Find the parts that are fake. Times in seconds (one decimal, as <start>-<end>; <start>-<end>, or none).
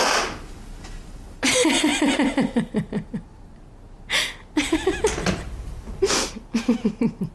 none